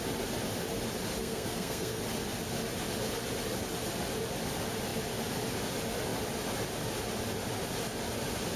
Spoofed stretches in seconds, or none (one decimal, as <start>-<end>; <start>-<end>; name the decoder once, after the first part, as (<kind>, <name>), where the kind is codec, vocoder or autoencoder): 1.2-2.0 (codec, SNAC)

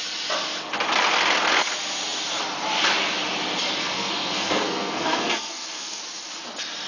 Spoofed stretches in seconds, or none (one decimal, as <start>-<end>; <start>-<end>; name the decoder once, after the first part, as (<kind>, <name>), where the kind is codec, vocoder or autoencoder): 3.8-6.0 (codec, SNAC)

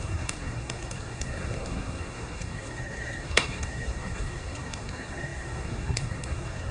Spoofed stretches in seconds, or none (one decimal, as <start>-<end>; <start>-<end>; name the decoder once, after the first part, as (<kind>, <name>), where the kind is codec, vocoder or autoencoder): 0.0-6.7 (codec, SNAC)

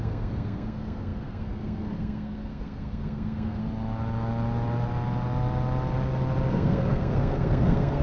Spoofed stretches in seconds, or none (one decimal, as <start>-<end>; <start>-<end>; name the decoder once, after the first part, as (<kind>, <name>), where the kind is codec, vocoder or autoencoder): 0.0-3.6 (codec, SNAC); 6.5-8.0

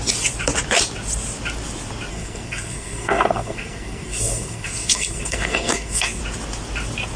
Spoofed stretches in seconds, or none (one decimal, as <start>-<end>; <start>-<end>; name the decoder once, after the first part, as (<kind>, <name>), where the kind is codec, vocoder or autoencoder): 2.1-6.2 (codec, SNAC)

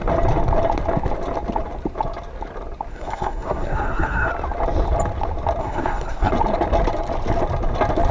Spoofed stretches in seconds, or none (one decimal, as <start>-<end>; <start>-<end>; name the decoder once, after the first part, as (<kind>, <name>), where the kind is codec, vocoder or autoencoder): 2.9-4.3 (codec, SNAC); 5.6-6.3

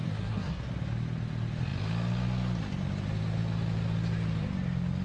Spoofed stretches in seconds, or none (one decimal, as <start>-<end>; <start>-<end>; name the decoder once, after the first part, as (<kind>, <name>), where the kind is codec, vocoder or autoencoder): 0.0-0.6 (codec, SNAC)